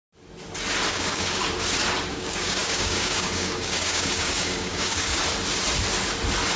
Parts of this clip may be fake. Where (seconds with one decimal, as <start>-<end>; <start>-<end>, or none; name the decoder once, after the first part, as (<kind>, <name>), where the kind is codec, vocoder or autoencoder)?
0.9-1.4 (codec, DAC); 2.1-5.2